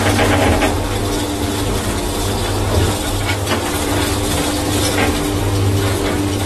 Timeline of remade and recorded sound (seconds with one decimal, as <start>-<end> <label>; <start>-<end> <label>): 0.0-6.5 recorded